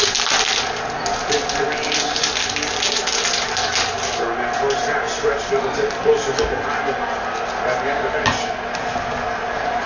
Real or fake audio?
real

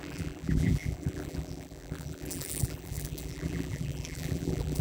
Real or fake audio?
fake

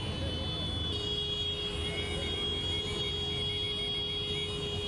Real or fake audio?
real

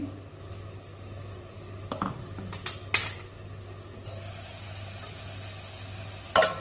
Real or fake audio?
real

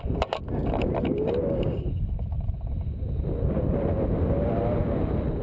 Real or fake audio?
real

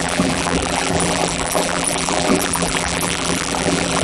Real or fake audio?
fake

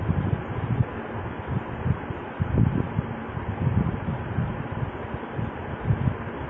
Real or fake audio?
real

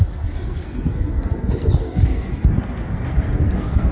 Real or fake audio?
fake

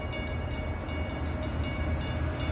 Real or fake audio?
real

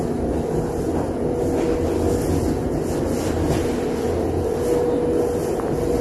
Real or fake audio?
real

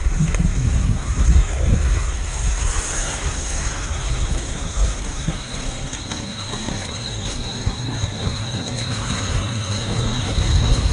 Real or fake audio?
fake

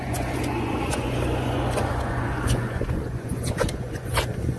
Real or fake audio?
fake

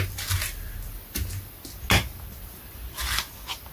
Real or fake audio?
real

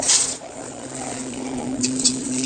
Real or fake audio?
fake